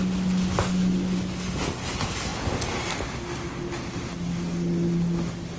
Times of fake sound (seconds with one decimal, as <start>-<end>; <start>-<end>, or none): none

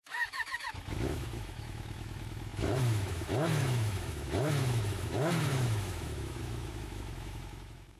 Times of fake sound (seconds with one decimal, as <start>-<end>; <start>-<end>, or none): 0.0-8.0

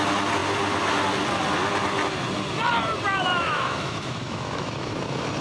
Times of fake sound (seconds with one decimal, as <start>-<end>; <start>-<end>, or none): 3.3-4.9

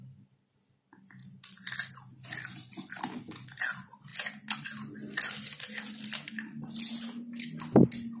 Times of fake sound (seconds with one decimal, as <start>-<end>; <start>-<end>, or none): none

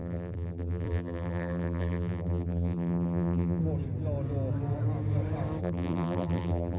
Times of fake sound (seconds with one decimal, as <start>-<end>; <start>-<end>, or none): 0.0-3.6; 5.6-6.8

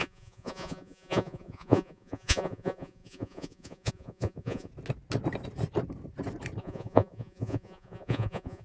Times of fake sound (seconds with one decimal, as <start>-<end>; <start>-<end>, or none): 0.0-4.7; 6.6-8.6

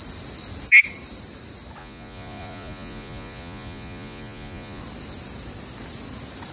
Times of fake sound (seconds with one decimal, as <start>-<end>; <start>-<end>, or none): 1.8-4.8